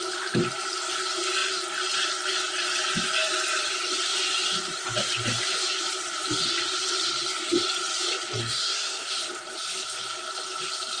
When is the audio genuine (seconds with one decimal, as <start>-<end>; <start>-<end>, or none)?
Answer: 0.0-8.4; 9.1-11.0

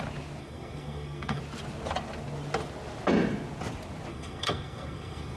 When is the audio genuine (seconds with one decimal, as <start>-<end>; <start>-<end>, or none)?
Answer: 0.0-0.4; 1.4-4.1

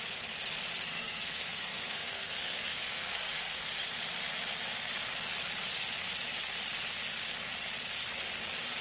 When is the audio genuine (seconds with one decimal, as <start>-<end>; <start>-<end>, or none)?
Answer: 0.0-0.9; 3.7-8.8

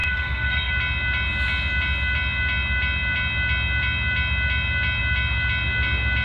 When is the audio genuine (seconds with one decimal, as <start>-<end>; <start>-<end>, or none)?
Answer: 0.7-6.2

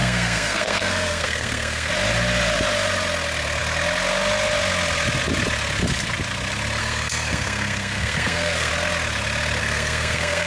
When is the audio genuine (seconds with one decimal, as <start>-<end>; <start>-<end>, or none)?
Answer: 1.9-6.8; 8.7-9.6